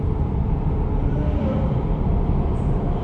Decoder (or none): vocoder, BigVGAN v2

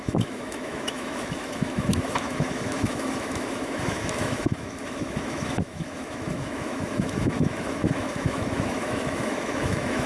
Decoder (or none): autoencoder, DAC-VAE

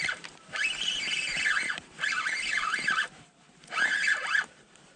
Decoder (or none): vocoder, BigVGAN v2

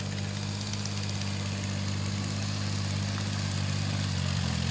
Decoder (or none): none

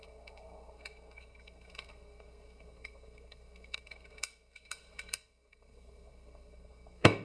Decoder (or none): codec, SNAC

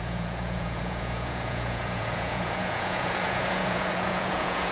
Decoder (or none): vocoder, Vocos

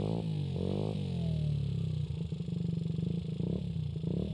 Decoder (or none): none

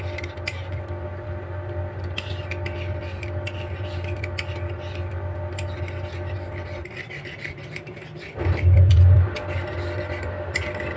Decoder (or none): none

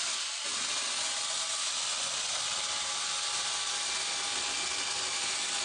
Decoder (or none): none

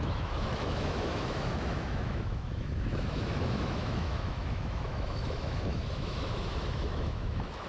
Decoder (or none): autoencoder, DAC-VAE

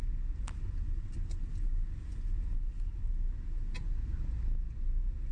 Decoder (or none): none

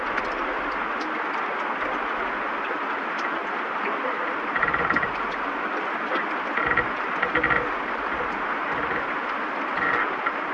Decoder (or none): none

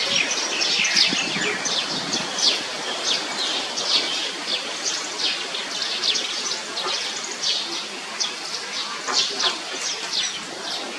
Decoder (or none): none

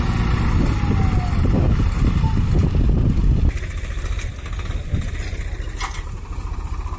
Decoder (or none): none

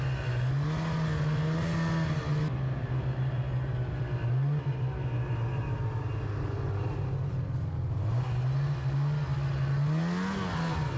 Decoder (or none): none